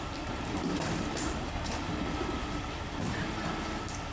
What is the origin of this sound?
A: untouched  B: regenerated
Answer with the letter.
B